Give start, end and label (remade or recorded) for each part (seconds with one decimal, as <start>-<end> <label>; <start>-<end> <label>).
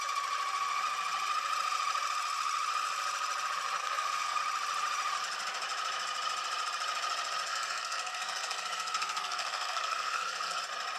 0.0-3.8 recorded; 3.8-4.4 remade; 4.4-7.5 recorded; 7.5-10.6 remade; 10.6-11.0 recorded